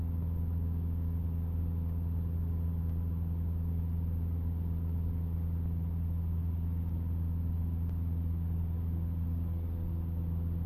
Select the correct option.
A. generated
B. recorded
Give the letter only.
B